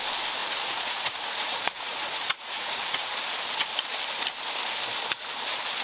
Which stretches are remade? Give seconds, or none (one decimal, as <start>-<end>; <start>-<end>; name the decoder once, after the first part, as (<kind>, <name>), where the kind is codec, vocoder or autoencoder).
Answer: 0.4-3.1 (vocoder, Vocos)